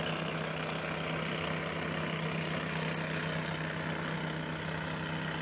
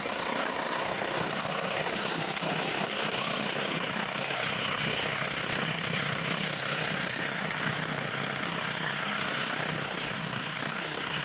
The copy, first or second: second